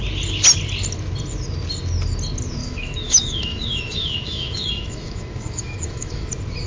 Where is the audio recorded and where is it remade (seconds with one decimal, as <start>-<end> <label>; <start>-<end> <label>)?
0.0-2.6 recorded; 2.6-6.3 remade; 6.3-6.7 recorded